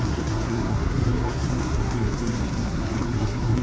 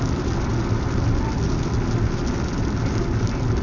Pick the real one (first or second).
second